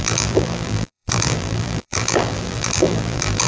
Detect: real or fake fake